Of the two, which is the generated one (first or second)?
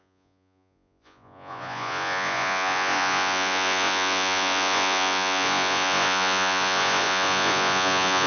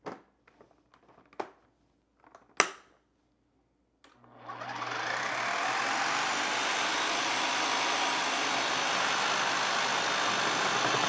first